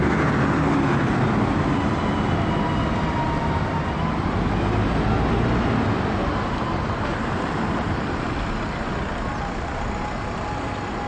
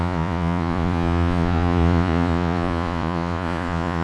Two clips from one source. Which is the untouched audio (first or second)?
first